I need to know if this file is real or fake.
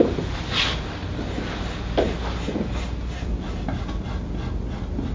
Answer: real